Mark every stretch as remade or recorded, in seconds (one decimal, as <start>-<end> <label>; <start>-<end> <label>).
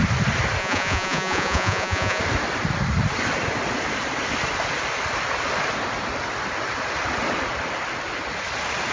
0.0-0.6 recorded; 0.6-2.2 remade; 2.2-8.9 recorded